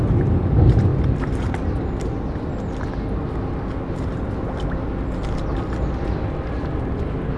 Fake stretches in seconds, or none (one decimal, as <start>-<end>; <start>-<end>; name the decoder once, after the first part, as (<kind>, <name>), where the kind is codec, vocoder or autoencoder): none